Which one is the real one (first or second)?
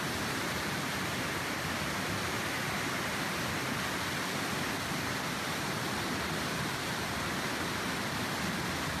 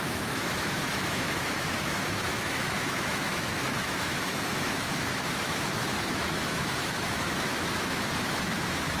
first